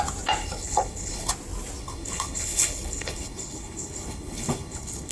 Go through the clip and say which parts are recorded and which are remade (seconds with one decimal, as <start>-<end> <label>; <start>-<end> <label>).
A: 0.0-0.4 recorded; 0.4-1.3 remade; 1.3-1.8 recorded; 1.8-5.1 remade